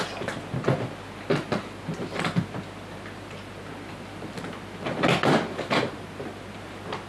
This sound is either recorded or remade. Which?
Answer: recorded